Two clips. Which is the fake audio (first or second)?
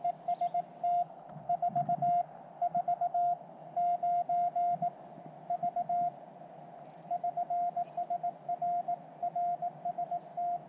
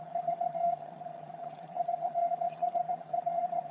second